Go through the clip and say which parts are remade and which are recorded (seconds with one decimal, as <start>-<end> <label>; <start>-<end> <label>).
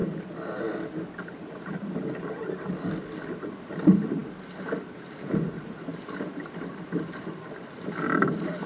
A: 0.0-8.7 recorded